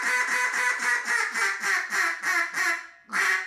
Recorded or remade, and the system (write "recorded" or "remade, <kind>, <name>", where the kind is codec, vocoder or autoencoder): recorded